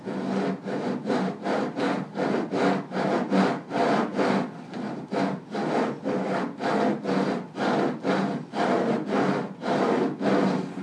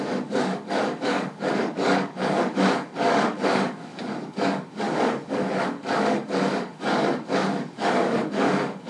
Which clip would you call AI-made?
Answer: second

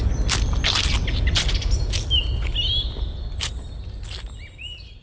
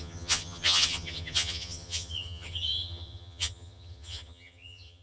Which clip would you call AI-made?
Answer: second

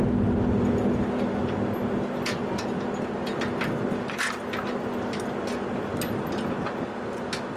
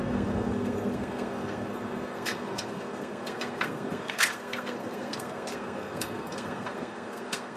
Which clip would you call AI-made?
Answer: second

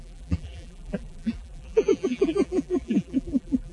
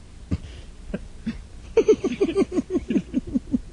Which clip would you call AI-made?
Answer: first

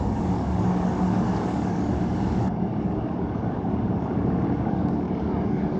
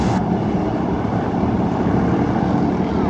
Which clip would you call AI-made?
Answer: first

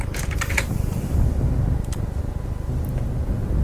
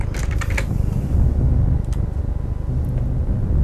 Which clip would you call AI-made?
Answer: first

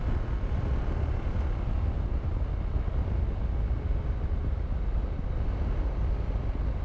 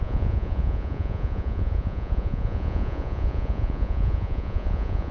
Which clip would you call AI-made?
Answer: second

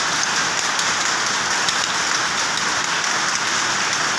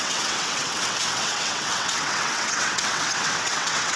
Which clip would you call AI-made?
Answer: second